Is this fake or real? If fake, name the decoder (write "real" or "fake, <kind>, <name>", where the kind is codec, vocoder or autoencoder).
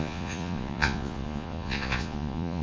fake, vocoder, Vocos